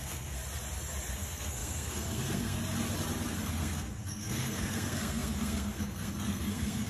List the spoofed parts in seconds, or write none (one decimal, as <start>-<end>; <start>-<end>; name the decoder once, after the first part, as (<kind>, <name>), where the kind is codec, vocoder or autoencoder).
0.0-0.4 (codec, SNAC); 1.1-2.6; 3.3-6.9